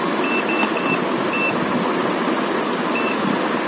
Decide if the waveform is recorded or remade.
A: recorded